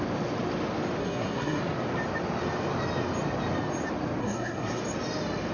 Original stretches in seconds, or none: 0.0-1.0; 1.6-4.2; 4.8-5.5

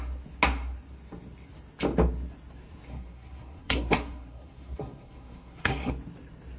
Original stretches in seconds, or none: 0.0-2.9; 5.9-6.6

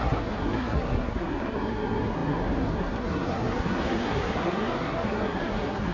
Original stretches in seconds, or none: none

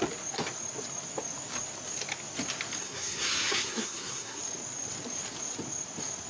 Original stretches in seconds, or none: 0.0-2.8; 4.4-6.3